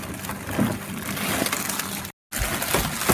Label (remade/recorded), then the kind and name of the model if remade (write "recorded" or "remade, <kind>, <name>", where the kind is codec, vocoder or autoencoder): recorded